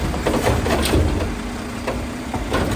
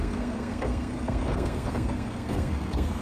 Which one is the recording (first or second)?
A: first